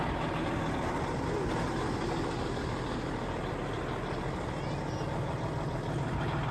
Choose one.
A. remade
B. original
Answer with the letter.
B